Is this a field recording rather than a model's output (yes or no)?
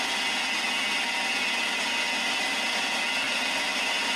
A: yes